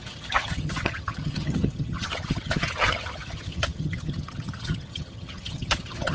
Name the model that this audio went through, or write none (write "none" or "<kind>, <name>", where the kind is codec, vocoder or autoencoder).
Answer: vocoder, HiFi-GAN